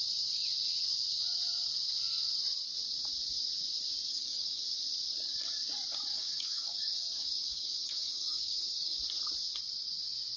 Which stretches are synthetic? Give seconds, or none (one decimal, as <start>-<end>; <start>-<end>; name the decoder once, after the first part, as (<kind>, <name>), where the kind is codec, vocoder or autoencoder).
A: 4.1-4.6 (codec, DAC); 6.1-9.0